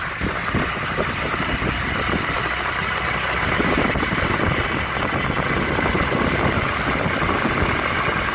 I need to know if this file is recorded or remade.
recorded